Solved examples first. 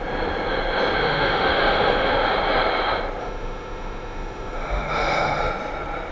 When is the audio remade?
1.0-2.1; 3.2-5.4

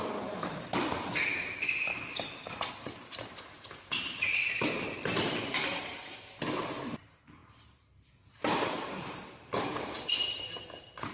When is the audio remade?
0.0-11.1

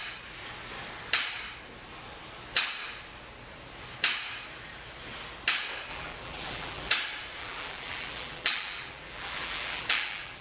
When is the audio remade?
5.9-6.9; 7.4-10.4